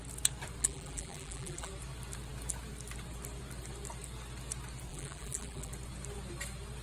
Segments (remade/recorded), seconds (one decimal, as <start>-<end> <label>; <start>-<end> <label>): 0.0-0.6 recorded; 0.6-1.7 remade; 1.7-4.9 recorded; 4.9-5.7 remade; 5.7-6.8 recorded